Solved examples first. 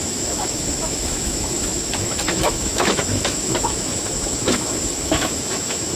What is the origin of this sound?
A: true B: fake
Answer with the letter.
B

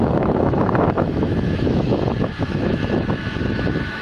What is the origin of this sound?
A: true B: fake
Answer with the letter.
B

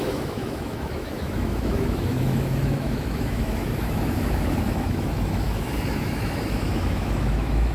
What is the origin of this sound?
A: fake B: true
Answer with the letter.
A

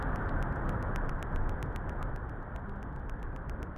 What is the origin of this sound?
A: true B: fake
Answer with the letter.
A